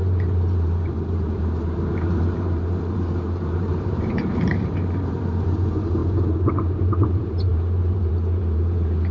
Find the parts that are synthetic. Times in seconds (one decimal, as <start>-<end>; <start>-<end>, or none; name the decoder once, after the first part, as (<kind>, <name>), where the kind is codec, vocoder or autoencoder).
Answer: 0.0-9.1 (vocoder, BigVGAN v2)